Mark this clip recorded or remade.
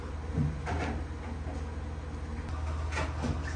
recorded